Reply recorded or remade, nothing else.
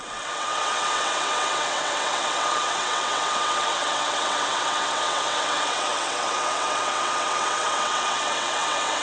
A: remade